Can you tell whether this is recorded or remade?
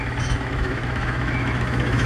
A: remade